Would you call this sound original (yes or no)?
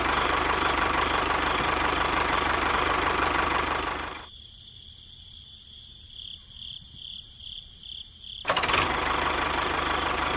no